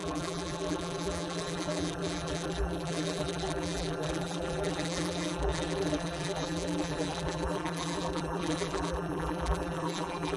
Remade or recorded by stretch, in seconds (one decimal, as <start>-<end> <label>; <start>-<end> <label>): 0.0-10.4 remade